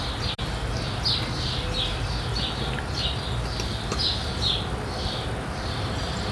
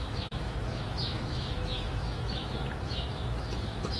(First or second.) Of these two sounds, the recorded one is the first